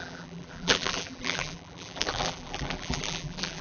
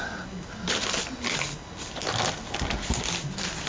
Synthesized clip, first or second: first